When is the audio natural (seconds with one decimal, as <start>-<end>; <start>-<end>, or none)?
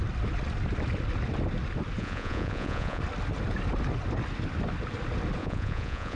0.0-2.0; 3.0-5.4